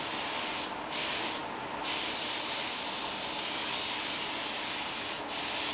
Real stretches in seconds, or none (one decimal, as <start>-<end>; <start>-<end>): 0.0-5.7